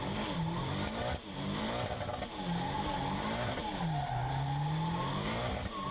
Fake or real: real